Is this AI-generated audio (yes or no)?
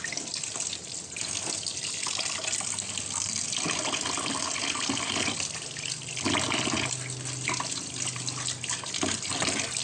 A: no